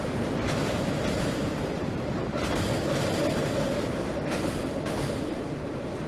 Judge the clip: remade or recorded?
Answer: remade